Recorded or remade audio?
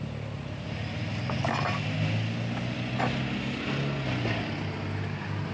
recorded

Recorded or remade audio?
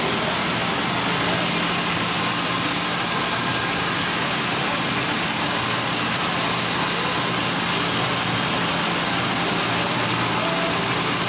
recorded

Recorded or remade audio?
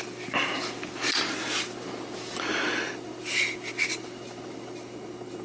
recorded